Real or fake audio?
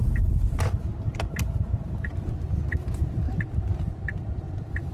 fake